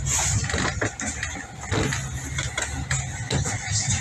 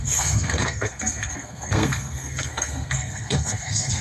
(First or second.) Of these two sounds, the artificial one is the second